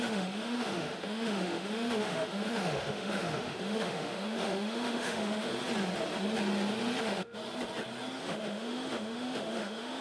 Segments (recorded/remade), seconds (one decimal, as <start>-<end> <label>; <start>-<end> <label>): 0.0-5.5 remade; 5.5-7.0 recorded; 7.0-7.4 remade; 7.4-8.2 recorded; 8.2-10.0 remade